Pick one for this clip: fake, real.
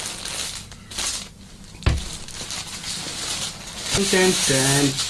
real